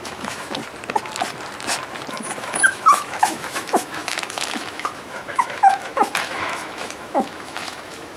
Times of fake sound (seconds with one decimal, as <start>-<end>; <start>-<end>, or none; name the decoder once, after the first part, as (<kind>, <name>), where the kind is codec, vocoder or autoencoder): 0.0-0.6 (autoencoder, DAC-VAE); 2.1-8.2